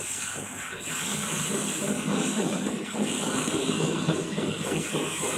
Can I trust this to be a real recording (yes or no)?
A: no